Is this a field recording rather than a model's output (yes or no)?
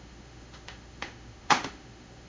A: no